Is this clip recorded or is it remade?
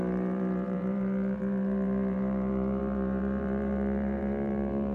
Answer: remade